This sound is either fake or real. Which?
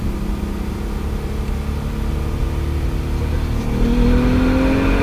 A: real